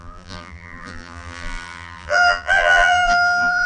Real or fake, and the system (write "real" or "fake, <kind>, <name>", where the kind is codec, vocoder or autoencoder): fake, vocoder, BigVGAN v2